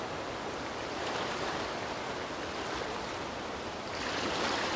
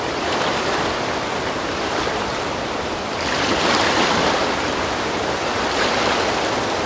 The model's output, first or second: second